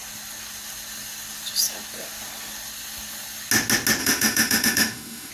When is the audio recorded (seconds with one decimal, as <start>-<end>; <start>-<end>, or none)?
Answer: 0.0-4.0